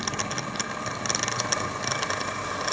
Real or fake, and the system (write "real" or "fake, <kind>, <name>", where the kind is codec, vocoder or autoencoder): real